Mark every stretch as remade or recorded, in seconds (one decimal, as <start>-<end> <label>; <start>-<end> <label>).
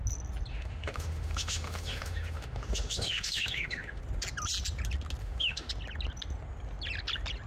0.0-0.5 recorded; 0.5-4.0 remade; 4.0-5.2 recorded; 5.2-5.7 remade; 5.7-7.5 recorded